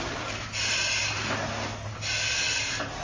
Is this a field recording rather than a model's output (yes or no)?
yes